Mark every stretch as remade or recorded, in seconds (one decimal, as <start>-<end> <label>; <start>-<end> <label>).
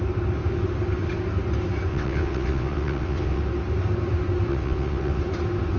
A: 0.0-1.9 recorded; 1.9-3.4 remade; 3.4-4.5 recorded; 4.5-5.2 remade; 5.2-5.8 recorded